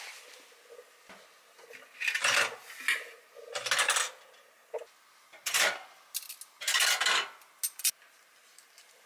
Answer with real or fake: real